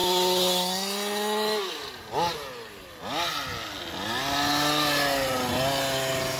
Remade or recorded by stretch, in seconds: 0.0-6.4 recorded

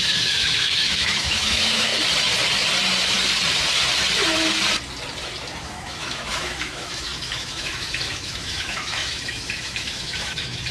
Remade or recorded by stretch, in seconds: 0.0-1.9 remade; 1.9-5.6 recorded; 5.6-10.7 remade

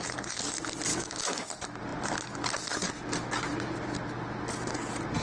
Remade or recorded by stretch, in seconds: 0.0-0.9 recorded; 0.9-1.5 remade; 1.5-5.2 recorded

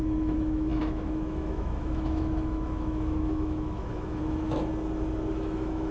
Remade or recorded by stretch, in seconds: 0.0-4.7 remade; 4.7-5.3 recorded; 5.3-5.9 remade

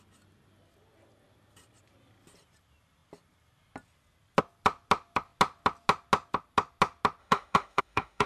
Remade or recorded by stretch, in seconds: 0.0-7.2 recorded; 7.2-8.3 remade

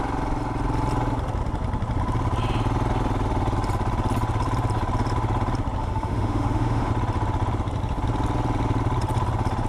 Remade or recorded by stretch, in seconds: 0.0-5.8 recorded; 5.8-6.9 remade; 6.9-9.7 recorded

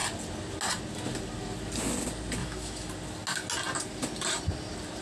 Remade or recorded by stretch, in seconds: 0.0-2.4 recorded; 2.4-2.9 remade; 2.9-5.0 recorded